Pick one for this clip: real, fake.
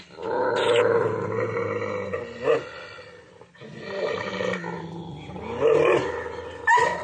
real